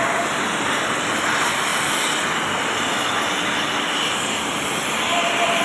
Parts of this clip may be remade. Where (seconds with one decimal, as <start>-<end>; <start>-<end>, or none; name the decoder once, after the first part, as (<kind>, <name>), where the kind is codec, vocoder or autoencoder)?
none